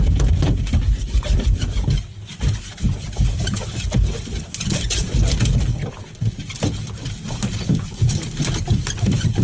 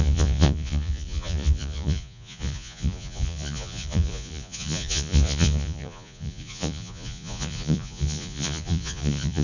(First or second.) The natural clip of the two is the first